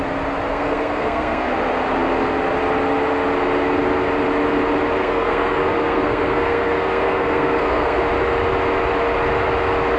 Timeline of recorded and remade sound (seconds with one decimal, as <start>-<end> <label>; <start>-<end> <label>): 0.0-0.5 recorded; 0.5-1.5 remade; 1.5-5.0 recorded; 5.0-8.0 remade; 8.0-10.0 recorded